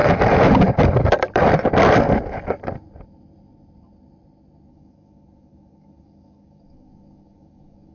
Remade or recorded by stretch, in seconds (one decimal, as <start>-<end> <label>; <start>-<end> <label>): 0.0-4.7 recorded; 4.7-7.9 remade